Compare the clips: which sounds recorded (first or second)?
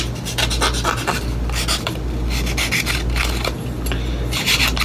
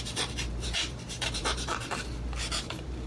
first